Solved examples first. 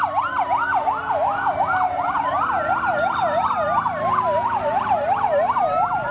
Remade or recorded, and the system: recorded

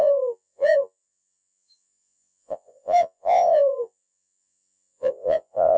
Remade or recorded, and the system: remade, vocoder, Vocos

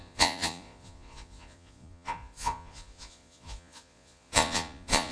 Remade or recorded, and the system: remade, vocoder, Vocos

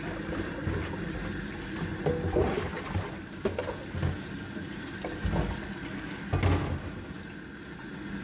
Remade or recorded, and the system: recorded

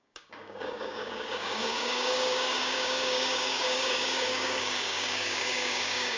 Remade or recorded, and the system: remade, codec, DAC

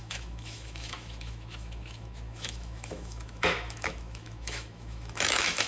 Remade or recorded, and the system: remade, autoencoder, DAC-VAE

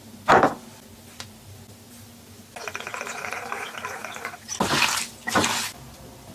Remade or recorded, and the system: recorded